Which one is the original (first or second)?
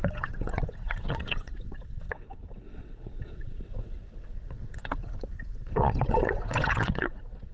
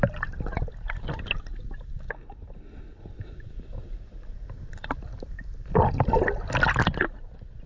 second